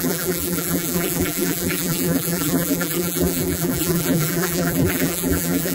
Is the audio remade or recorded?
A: remade